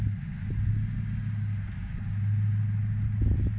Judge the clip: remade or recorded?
recorded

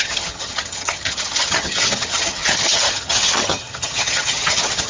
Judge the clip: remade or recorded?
remade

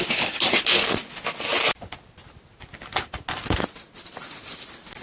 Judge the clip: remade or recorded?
recorded